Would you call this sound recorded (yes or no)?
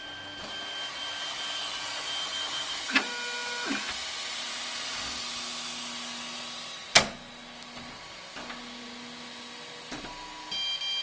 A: yes